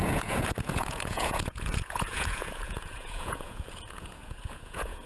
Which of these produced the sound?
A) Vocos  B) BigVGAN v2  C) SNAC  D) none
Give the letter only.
A